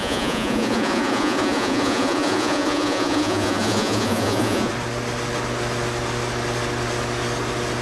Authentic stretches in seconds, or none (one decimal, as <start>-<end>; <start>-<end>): 4.7-7.8